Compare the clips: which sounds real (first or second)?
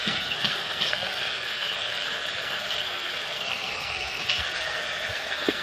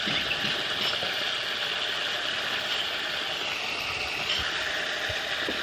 second